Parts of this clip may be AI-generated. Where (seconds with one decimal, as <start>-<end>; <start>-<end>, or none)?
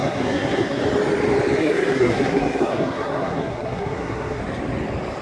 0.0-0.8; 1.6-4.4